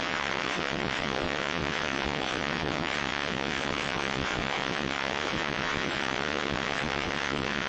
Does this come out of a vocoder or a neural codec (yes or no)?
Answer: yes